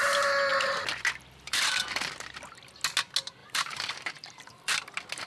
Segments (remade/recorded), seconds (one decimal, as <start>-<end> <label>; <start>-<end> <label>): 0.0-0.5 recorded; 0.5-1.8 remade; 1.8-3.4 recorded; 3.4-4.8 remade; 4.8-5.3 recorded